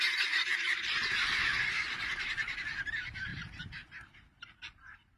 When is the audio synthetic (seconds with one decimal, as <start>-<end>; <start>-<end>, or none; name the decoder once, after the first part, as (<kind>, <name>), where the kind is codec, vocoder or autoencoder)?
none